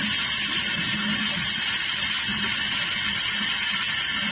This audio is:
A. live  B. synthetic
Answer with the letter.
A